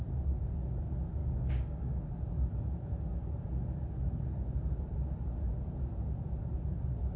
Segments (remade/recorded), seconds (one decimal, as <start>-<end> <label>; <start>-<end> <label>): 0.0-1.2 recorded; 1.2-2.0 remade; 2.0-7.2 recorded